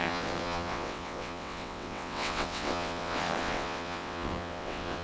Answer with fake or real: fake